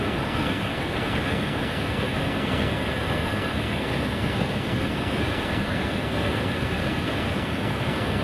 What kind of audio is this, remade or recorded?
remade